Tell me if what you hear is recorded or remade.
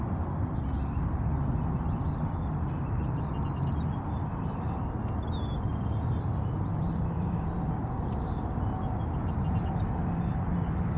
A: recorded